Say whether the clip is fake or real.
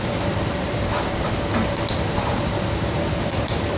fake